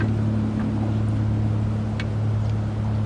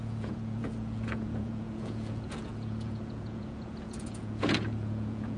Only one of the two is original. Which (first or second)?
first